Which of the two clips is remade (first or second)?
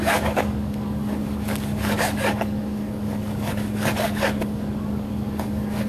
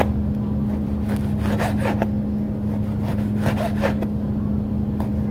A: first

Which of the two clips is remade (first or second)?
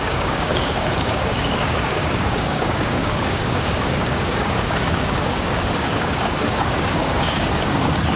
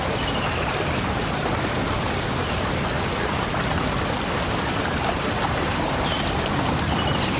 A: first